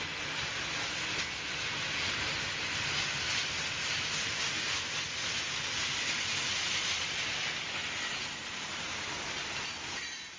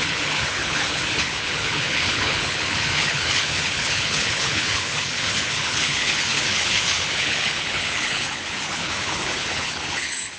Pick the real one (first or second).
first